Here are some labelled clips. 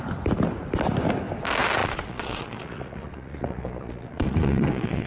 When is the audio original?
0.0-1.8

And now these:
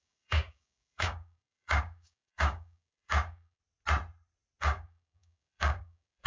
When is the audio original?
3.6-4.6

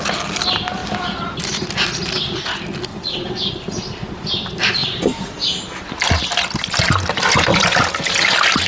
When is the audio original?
0.0-2.9; 3.5-8.7

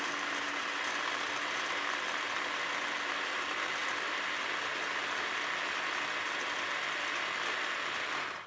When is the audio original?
0.0-8.5